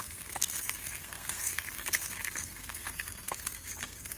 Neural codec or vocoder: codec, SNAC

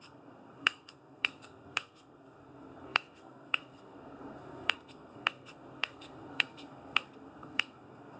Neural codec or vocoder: codec, SNAC